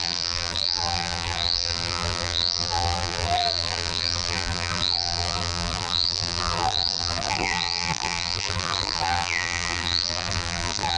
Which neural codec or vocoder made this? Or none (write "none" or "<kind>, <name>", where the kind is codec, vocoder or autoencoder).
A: vocoder, BigVGAN v2